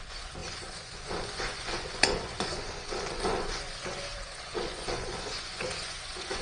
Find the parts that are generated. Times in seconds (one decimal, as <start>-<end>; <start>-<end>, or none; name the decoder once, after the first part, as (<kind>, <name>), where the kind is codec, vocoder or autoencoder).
0.0-6.4 (vocoder, Vocos)